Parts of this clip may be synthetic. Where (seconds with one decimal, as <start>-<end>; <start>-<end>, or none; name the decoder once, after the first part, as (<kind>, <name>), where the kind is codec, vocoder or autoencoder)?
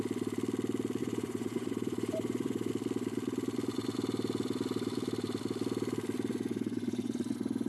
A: 1.0-2.7 (vocoder, Vocos); 6.3-7.7